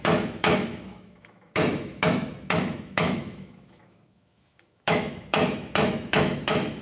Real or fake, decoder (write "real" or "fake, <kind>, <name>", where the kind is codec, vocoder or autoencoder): fake, autoencoder, DAC-VAE